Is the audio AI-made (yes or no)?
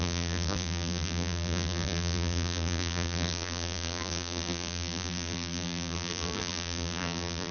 yes